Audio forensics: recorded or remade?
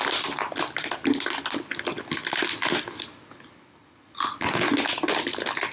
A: recorded